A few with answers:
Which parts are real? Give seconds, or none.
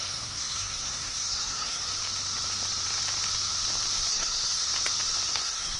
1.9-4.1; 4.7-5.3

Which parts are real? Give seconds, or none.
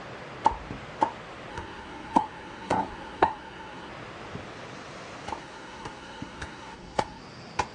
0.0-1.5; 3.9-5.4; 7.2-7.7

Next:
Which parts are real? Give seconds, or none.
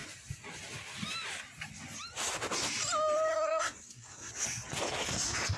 0.0-3.3; 4.3-5.6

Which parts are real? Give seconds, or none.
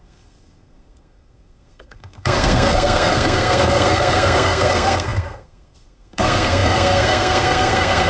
none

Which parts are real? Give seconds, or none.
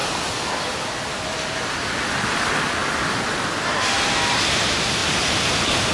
0.0-5.9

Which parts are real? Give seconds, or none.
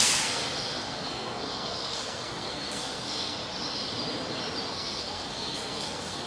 3.4-4.7